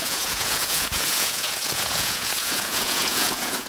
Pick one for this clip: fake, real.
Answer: fake